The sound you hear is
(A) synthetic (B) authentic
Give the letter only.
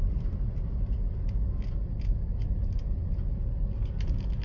B